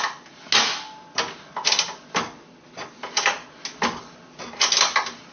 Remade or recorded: recorded